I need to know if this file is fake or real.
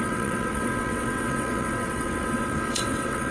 fake